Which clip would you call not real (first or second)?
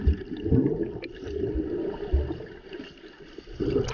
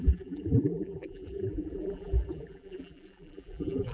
second